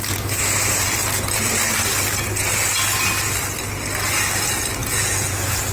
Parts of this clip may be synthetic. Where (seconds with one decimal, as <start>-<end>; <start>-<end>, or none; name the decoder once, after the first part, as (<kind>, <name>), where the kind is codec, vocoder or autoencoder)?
4.8-5.7 (vocoder, Vocos)